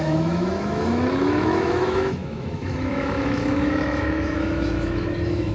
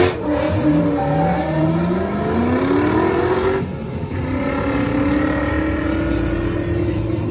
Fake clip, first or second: first